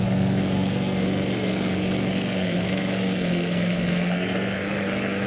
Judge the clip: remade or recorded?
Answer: remade